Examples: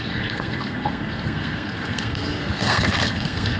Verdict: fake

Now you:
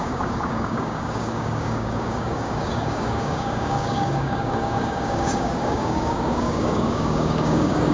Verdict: fake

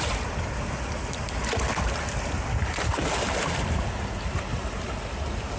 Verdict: real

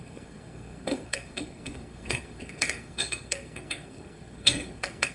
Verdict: fake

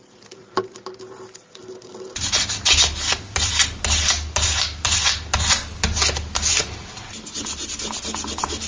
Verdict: real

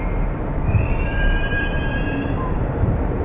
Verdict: fake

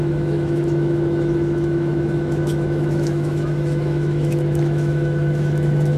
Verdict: fake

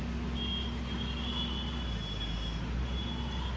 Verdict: real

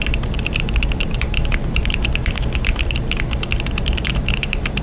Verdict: fake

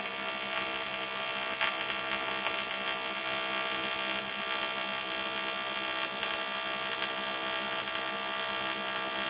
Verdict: real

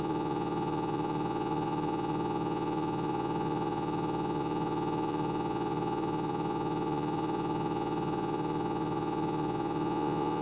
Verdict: fake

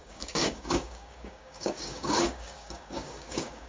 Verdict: fake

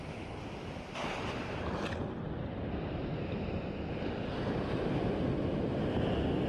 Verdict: real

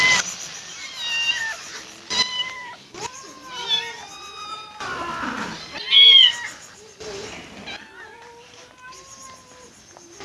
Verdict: real